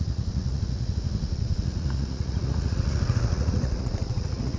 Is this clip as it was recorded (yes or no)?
no